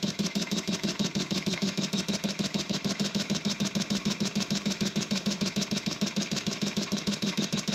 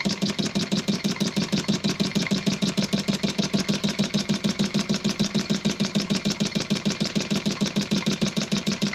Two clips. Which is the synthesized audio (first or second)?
first